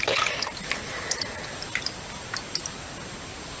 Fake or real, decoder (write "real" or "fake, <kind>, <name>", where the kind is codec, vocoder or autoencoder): real